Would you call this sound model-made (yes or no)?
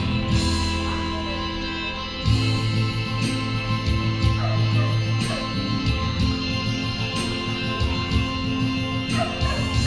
no